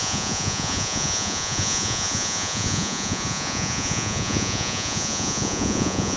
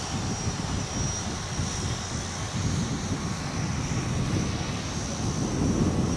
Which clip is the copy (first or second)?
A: first